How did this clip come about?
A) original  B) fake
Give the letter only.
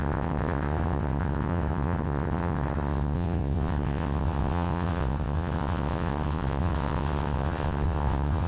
B